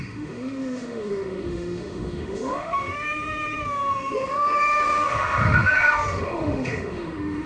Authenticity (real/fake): fake